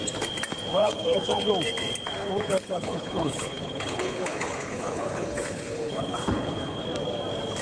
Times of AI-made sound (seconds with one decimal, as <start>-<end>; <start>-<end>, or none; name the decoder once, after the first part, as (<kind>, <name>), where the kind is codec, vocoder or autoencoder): 0.7-1.5 (codec, HILCodec); 2.2-6.8